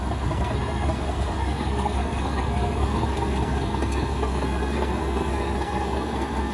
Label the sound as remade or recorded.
remade